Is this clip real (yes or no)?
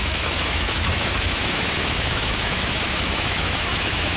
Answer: no